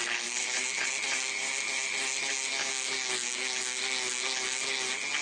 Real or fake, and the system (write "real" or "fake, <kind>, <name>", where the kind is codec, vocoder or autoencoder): real